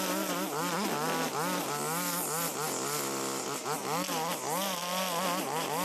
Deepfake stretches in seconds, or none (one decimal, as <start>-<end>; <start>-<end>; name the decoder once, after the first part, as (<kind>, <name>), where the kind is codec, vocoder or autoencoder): none